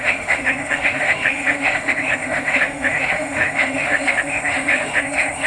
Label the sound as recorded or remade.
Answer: remade